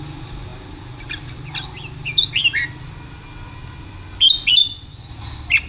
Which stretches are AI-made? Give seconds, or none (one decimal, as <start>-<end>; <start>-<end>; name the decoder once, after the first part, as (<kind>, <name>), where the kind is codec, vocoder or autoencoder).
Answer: 4.6-5.1 (vocoder, Vocos)